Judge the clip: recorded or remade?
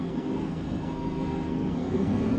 remade